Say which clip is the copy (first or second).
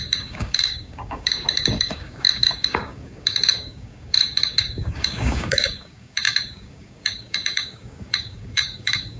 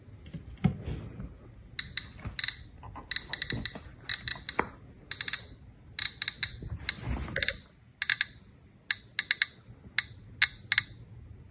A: first